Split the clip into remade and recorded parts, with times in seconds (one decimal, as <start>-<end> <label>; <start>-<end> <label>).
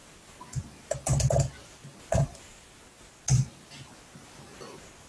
0.0-5.1 recorded